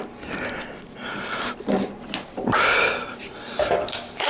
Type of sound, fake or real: real